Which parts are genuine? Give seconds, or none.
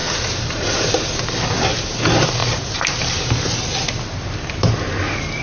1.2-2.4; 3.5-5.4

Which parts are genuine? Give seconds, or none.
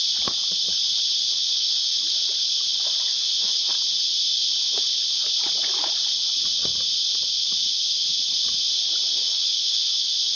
0.0-1.3; 2.0-3.1; 3.7-9.1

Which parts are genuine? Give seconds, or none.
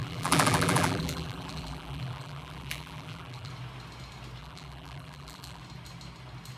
3.5-4.4; 5.6-6.6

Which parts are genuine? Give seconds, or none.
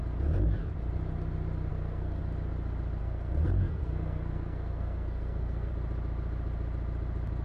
0.0-1.7; 2.2-3.0; 5.7-7.4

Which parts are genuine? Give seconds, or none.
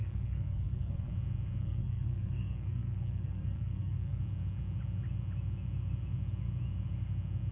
1.1-1.6; 4.2-7.5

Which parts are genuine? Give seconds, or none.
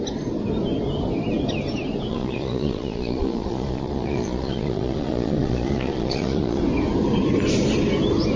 0.0-2.1; 6.6-8.4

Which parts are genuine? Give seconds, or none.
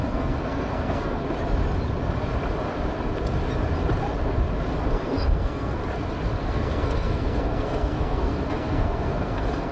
1.2-4.9; 5.8-6.4